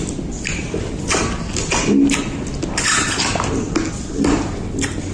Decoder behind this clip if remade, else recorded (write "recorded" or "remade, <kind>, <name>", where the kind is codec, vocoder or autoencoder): recorded